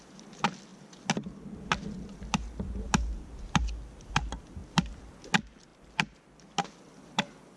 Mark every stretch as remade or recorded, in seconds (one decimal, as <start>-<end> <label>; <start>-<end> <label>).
0.0-7.6 recorded